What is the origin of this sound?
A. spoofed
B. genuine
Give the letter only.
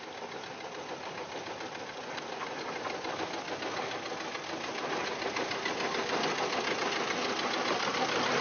B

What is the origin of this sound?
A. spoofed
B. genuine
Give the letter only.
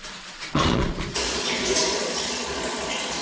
A